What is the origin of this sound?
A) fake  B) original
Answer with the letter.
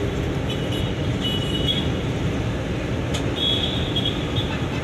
B